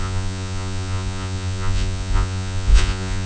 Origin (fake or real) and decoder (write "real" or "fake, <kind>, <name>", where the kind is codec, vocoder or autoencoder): fake, vocoder, Vocos